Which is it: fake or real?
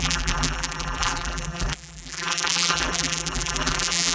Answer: fake